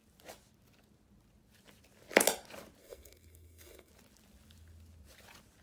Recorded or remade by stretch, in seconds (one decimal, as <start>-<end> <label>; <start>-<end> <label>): 0.0-2.8 recorded; 2.8-3.9 remade; 3.9-5.6 recorded